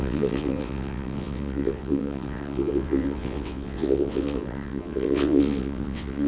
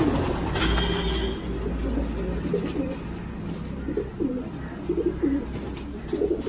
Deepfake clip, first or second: first